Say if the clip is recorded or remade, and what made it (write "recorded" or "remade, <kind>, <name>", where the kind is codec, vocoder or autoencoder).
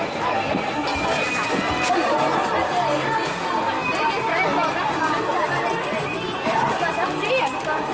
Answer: recorded